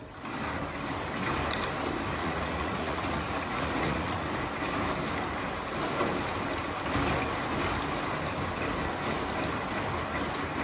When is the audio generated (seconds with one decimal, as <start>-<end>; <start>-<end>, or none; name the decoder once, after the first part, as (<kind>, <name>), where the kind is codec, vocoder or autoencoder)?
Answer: 2.2-4.3 (vocoder, Vocos)